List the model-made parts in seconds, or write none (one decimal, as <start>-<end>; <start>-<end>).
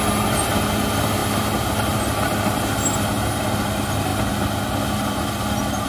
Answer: none